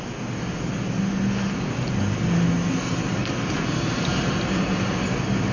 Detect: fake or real real